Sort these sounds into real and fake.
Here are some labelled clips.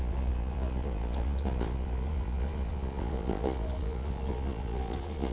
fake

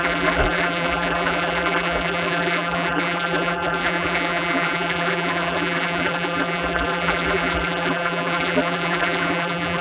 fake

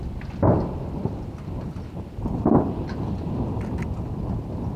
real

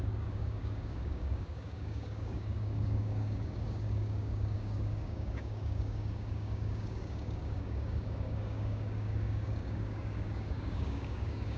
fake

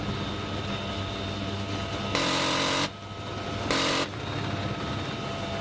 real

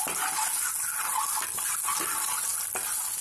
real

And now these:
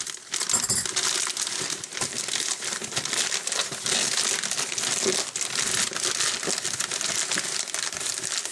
real